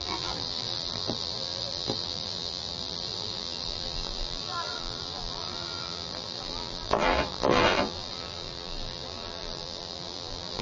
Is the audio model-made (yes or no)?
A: yes